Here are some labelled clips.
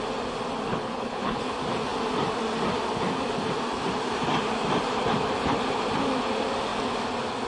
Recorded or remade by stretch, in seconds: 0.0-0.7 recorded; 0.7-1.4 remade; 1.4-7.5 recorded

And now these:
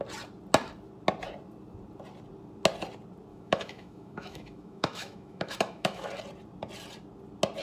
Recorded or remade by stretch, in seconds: 0.0-3.3 recorded; 3.3-6.1 remade; 6.1-7.6 recorded

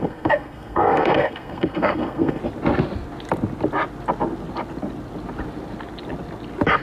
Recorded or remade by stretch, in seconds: 0.0-2.4 remade; 2.4-6.8 recorded